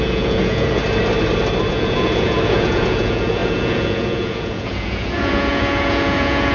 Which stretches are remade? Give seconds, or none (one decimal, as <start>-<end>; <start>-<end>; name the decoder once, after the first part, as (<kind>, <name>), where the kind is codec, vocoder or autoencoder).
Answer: 0.0-0.8 (vocoder, Vocos); 1.7-6.5